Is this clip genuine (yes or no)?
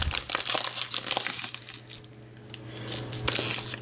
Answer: yes